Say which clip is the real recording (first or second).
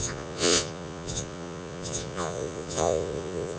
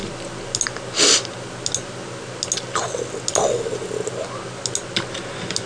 second